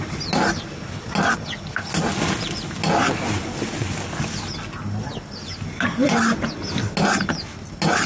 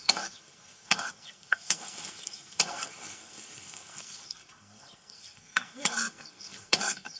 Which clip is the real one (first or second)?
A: first